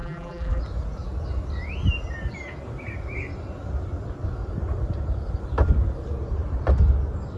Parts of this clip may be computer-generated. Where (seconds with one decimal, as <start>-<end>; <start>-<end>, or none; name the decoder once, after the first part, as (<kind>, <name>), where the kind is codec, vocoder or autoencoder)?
0.0-0.6 (vocoder, BigVGAN v2)